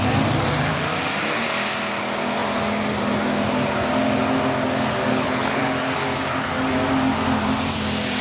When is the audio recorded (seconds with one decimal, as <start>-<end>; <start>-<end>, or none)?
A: 0.0-5.1; 5.6-8.2